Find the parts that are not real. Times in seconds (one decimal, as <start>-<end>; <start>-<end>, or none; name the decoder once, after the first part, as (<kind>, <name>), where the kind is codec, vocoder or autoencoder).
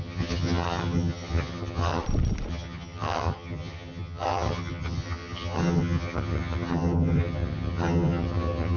0.0-2.0 (vocoder, HiFi-GAN); 2.5-8.8